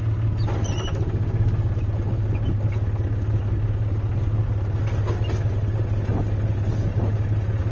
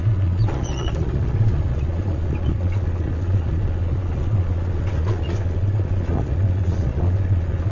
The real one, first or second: first